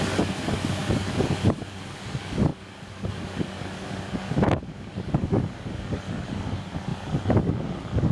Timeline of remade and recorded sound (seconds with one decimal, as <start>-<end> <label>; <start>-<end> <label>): 0.0-8.1 remade